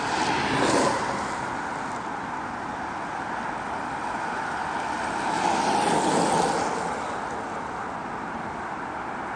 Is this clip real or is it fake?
real